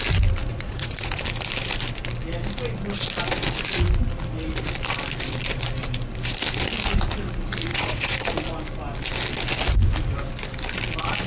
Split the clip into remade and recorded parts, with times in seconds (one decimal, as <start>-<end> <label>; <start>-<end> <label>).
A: 0.0-0.5 recorded; 0.5-1.2 remade; 1.2-7.7 recorded; 7.7-8.2 remade; 8.2-11.3 recorded